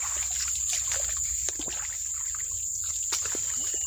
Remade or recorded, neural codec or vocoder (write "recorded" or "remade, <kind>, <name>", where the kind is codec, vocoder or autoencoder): recorded